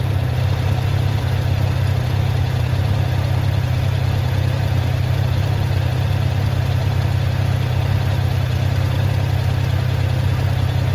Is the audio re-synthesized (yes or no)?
no